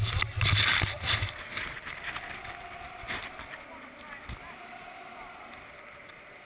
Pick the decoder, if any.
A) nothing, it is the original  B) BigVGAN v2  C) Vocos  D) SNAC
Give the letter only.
A